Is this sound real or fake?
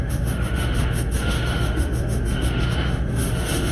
fake